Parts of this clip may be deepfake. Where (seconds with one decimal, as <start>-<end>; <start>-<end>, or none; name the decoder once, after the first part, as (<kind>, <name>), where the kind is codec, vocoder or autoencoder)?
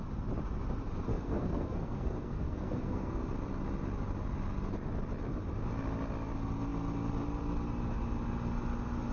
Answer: 1.1-3.3 (codec, SNAC)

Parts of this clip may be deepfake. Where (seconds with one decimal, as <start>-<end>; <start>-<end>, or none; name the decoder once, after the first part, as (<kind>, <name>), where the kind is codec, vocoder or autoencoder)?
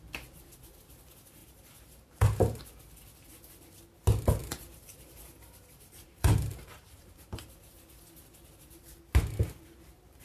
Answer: 1.4-2.6 (vocoder, BigVGAN v2); 4.4-7.7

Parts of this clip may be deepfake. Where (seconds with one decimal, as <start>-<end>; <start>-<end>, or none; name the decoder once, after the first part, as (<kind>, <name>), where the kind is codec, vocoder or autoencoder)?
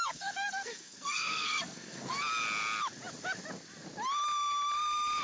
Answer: 0.0-2.2 (codec, SNAC)